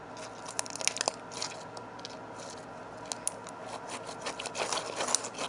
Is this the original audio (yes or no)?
yes